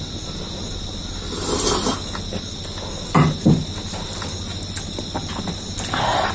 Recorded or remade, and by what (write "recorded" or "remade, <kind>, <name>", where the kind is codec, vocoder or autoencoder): recorded